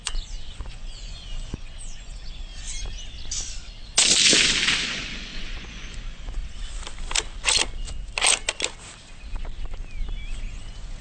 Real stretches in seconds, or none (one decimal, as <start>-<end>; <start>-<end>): 2.5-4.8; 6.4-10.4